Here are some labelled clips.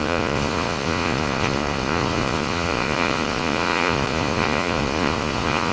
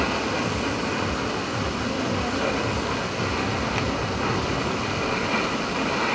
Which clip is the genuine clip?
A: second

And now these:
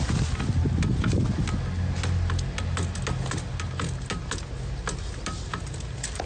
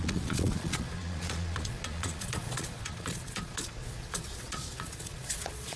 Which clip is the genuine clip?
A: first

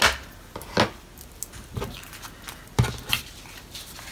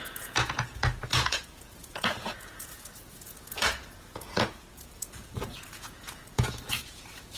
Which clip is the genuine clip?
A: first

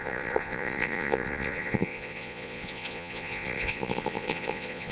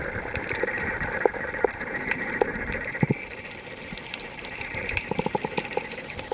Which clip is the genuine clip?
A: second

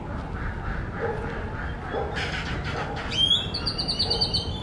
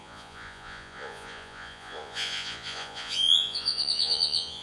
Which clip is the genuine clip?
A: first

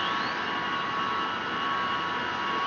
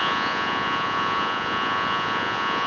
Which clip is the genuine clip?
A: first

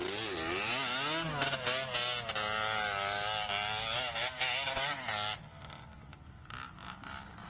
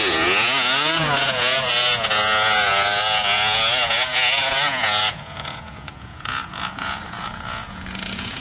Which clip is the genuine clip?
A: first